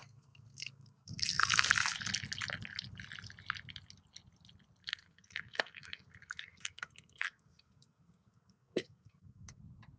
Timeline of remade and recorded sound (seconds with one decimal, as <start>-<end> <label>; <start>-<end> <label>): 0.0-1.7 remade; 1.7-4.8 recorded; 4.8-9.6 remade; 9.6-10.0 recorded